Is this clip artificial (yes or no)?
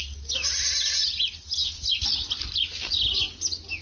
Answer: no